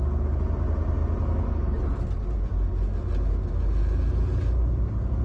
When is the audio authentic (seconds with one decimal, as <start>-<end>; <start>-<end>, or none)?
0.0-5.2